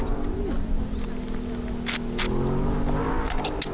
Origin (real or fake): real